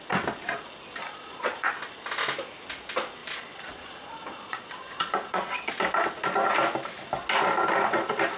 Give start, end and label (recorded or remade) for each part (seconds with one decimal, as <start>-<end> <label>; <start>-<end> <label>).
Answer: 0.0-1.0 recorded; 1.0-1.7 remade; 1.7-3.2 recorded; 3.2-5.7 remade; 5.7-8.4 recorded